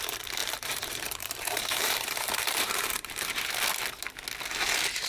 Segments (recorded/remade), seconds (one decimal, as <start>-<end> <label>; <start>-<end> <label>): 0.0-0.4 recorded; 0.4-3.5 remade; 3.5-5.1 recorded